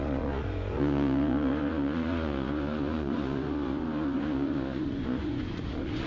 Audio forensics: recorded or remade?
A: remade